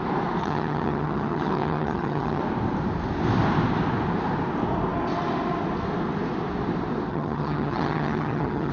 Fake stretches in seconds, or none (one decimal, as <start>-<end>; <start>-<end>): 0.4-2.4; 7.1-8.7